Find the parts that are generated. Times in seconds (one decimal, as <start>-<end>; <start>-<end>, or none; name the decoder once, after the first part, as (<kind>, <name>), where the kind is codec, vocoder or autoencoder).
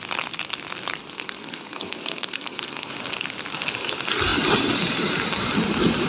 1.0-2.9 (codec, SNAC)